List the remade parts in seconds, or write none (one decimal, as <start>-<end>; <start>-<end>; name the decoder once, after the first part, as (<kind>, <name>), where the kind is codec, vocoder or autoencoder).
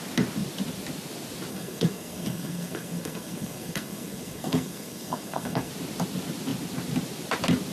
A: 1.5-5.7 (codec, SNAC)